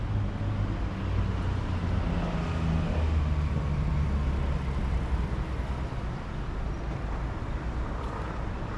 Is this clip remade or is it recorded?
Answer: recorded